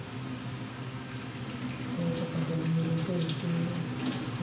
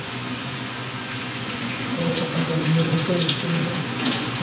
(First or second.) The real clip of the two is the first